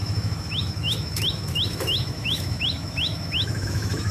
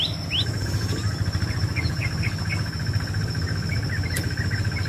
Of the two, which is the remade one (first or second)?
first